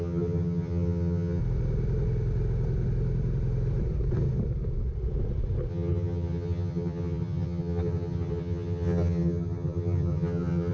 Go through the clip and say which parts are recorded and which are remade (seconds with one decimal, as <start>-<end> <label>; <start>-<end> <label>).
0.0-1.4 remade; 1.4-5.7 recorded; 5.7-10.7 remade